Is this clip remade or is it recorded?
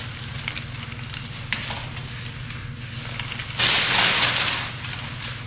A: recorded